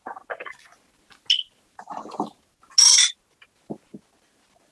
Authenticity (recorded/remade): recorded